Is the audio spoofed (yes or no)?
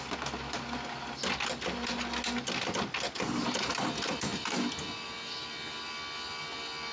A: no